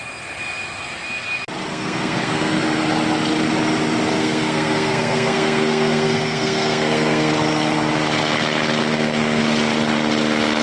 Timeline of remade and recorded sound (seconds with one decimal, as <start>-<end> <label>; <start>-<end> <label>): 0.0-1.7 recorded; 1.7-2.6 remade; 2.6-4.2 recorded; 4.2-7.3 remade; 7.3-8.8 recorded; 8.8-9.4 remade; 9.4-10.6 recorded